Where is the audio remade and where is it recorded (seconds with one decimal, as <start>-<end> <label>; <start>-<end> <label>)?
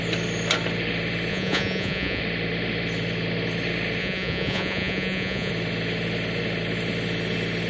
0.0-1.3 recorded; 1.3-2.2 remade; 2.2-4.0 recorded; 4.0-5.5 remade; 5.5-7.7 recorded